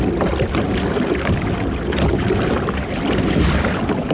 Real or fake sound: fake